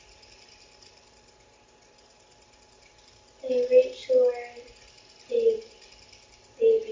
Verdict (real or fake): real